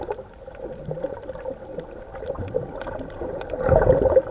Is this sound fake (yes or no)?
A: no